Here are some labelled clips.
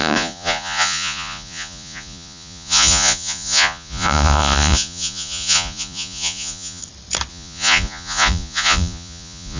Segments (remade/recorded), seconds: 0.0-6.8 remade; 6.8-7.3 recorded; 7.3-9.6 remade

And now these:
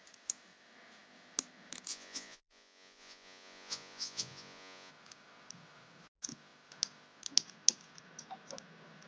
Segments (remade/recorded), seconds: 0.0-1.9 recorded; 1.9-4.9 remade; 4.9-9.1 recorded

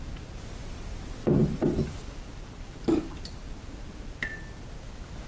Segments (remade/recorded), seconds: 0.0-5.3 recorded

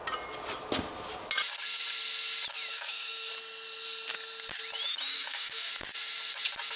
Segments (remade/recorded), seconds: 0.0-2.7 recorded; 2.7-3.3 remade; 3.3-4.9 recorded; 4.9-5.7 remade; 5.7-6.8 recorded

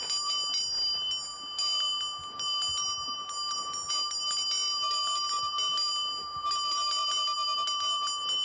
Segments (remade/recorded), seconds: 0.0-8.4 recorded

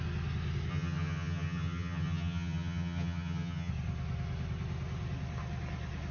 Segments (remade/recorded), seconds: 0.0-0.7 recorded; 0.7-3.7 remade; 3.7-6.1 recorded

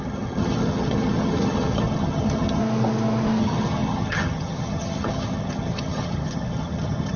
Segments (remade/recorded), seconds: 0.0-2.6 remade; 2.6-3.4 recorded; 3.4-7.2 remade

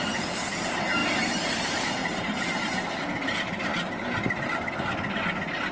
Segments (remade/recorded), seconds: 0.0-5.7 recorded